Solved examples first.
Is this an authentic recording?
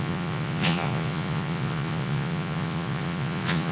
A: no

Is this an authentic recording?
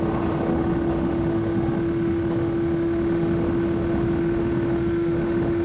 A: no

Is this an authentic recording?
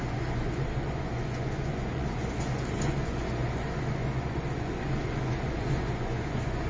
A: no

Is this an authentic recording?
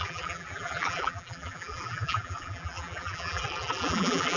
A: no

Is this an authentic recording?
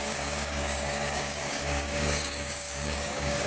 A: no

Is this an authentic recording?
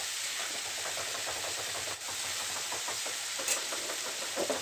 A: no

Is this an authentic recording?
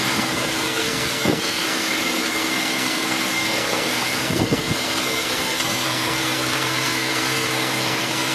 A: no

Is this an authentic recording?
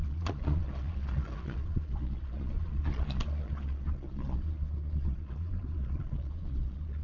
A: no